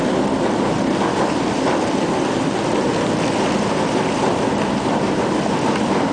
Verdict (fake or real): real